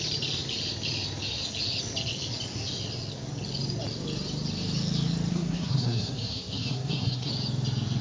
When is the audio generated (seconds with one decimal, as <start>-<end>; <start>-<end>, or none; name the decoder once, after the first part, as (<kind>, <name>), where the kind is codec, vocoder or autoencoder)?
5.3-7.3 (codec, SNAC)